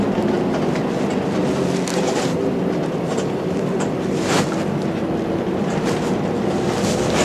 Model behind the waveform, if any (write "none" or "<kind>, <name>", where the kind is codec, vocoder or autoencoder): none